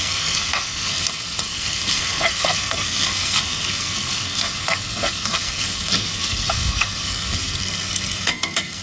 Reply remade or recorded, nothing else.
remade